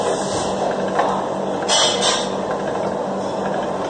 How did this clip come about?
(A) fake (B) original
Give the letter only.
B